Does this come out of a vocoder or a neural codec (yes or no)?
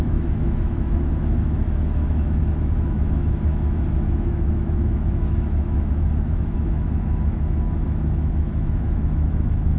yes